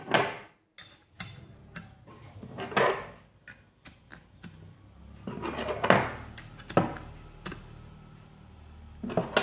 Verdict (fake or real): real